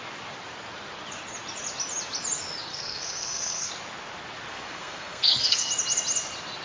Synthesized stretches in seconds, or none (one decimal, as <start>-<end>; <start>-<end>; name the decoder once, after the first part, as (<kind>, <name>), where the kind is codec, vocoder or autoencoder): 2.7-3.7 (codec, SNAC); 4.5-5.7